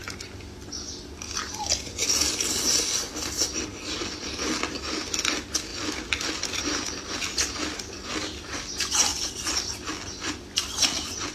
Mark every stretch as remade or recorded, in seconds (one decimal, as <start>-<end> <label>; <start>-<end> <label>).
0.0-5.7 recorded; 5.7-6.6 remade; 6.6-9.1 recorded; 9.1-9.9 remade; 9.9-11.3 recorded